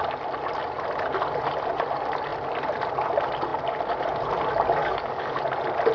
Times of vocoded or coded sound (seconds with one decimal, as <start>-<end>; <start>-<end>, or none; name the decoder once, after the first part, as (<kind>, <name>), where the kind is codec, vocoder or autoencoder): 4.8-5.4 (codec, DAC)